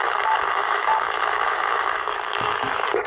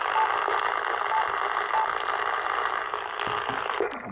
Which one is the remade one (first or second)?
first